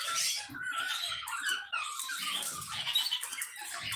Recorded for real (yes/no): yes